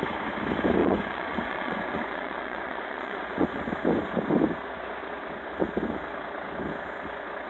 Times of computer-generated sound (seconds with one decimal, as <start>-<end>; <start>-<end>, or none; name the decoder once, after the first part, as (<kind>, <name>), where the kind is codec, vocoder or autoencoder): 0.8-3.7 (vocoder, Vocos)